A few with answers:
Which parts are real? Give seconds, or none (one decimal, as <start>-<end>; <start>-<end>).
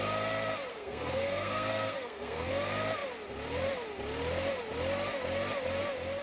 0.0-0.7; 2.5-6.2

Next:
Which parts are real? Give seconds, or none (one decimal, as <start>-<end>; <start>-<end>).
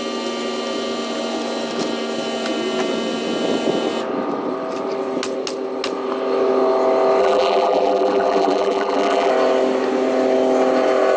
0.0-7.2; 9.3-11.2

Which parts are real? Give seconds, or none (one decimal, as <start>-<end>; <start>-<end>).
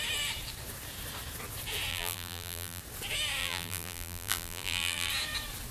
0.0-1.9; 2.8-3.4; 5.1-5.7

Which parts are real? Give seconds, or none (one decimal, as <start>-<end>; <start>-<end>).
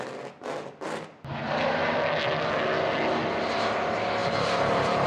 0.0-5.1